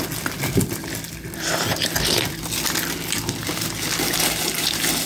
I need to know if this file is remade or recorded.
recorded